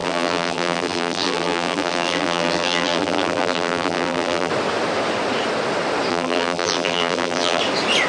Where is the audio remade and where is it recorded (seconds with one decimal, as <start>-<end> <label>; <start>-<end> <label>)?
0.0-4.5 remade; 4.5-6.1 recorded; 6.1-7.6 remade; 7.6-8.1 recorded